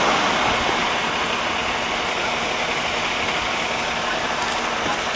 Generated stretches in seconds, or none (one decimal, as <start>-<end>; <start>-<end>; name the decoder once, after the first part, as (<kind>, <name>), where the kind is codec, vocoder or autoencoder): none